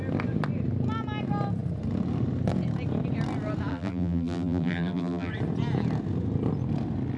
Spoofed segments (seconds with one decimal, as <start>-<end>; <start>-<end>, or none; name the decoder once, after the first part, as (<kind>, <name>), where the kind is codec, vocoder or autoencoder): 3.7-5.3 (vocoder, BigVGAN v2)